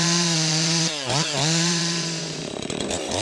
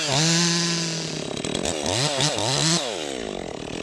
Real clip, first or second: second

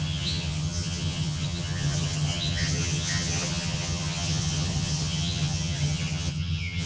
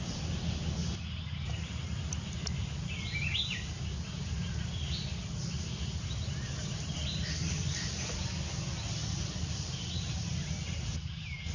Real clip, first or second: second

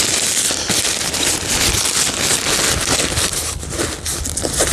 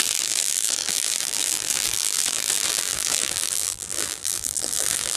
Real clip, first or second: first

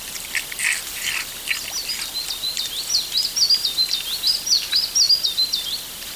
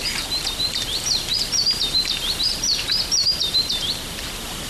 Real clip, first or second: first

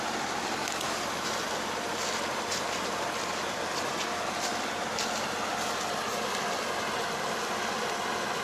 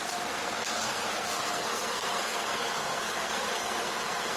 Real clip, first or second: first